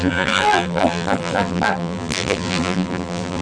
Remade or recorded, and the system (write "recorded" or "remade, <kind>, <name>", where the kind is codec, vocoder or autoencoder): remade, vocoder, BigVGAN v2